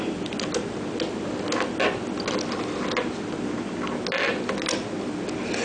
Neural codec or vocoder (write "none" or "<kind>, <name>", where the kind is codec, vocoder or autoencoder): none